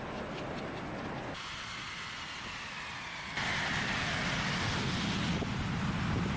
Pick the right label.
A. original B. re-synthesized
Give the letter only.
A